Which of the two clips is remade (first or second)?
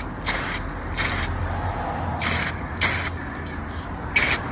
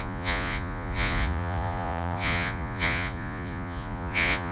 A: second